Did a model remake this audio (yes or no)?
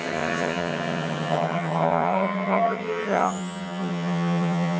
yes